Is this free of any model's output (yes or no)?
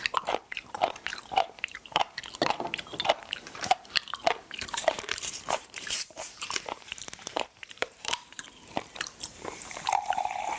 no